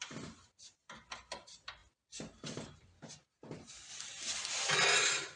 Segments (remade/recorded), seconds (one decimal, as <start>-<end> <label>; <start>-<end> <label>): 0.0-5.4 recorded